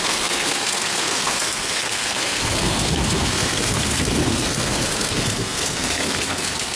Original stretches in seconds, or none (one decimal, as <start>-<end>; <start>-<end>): none